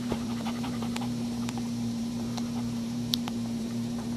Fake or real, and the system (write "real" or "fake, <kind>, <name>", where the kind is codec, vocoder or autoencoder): fake, vocoder, BigVGAN v2